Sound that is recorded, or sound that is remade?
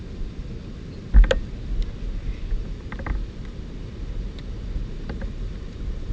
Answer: recorded